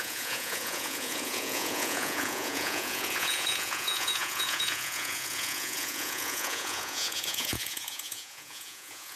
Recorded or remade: remade